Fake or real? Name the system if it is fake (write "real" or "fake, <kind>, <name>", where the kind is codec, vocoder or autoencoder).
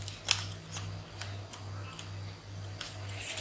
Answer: real